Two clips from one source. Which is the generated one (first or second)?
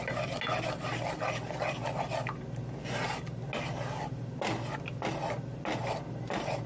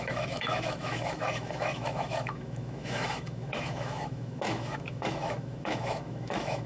second